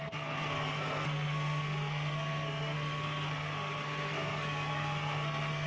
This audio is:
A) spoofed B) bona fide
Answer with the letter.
A